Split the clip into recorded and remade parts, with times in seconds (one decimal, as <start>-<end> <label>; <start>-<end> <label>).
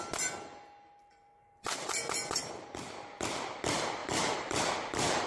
0.0-1.1 recorded; 1.1-1.9 remade; 1.9-4.0 recorded; 4.0-4.6 remade; 4.6-5.3 recorded